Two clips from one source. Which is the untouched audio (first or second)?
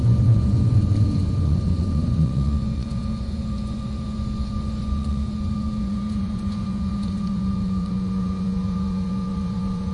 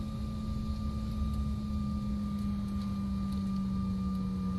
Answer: second